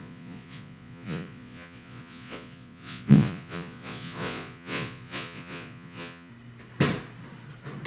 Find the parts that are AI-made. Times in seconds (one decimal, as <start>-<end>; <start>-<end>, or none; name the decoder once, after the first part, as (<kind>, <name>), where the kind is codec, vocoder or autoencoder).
0.0-6.3 (vocoder, Vocos)